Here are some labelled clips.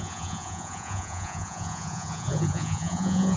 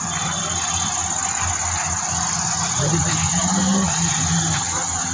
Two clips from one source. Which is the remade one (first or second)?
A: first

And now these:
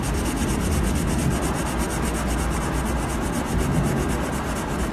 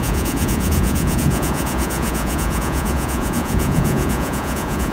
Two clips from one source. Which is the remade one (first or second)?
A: second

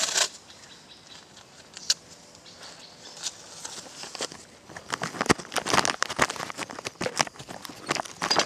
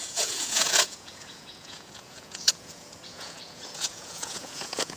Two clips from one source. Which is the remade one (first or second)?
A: second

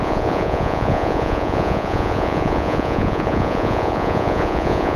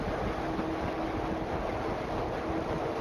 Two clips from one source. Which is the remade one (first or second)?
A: first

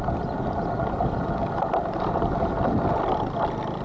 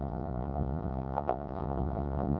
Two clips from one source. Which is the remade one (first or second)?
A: second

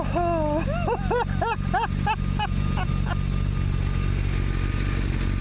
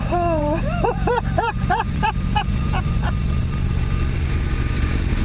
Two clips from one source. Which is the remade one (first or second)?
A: second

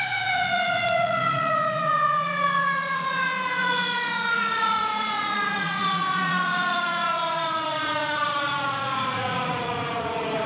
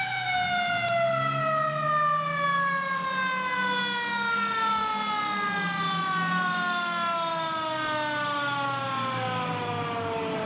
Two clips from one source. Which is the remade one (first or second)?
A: first